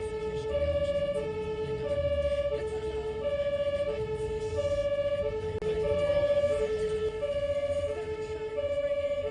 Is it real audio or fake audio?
real